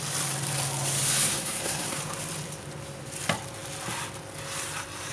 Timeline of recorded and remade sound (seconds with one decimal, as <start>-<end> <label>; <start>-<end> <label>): 0.0-1.3 recorded; 1.3-2.0 remade; 2.0-5.1 recorded